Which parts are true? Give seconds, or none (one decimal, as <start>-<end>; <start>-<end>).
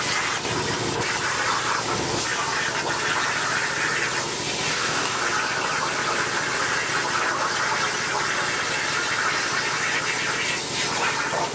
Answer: 0.0-4.7; 5.2-11.5